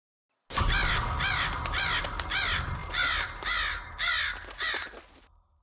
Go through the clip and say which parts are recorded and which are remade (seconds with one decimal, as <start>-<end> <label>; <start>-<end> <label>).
0.0-5.6 recorded